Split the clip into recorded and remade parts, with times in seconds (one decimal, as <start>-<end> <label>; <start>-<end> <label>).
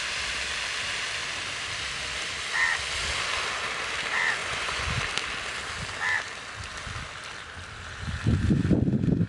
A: 0.0-4.4 recorded; 4.4-5.0 remade; 5.0-9.3 recorded